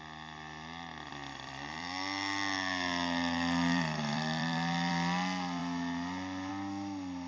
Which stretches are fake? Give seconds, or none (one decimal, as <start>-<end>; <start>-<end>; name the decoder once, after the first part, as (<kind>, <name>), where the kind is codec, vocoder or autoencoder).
1.1-4.9 (vocoder, BigVGAN v2)